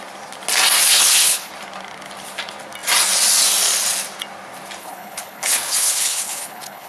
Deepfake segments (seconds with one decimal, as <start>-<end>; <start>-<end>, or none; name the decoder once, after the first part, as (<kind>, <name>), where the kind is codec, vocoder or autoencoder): 0.9-1.5 (codec, HILCodec); 4.8-6.9